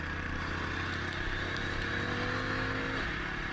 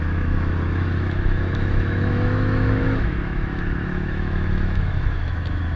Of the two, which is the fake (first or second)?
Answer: second